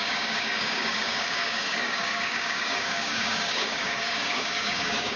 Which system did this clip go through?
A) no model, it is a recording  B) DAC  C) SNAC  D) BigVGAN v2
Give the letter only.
B